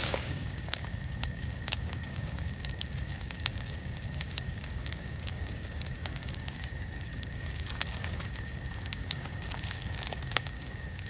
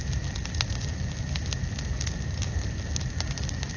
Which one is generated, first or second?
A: first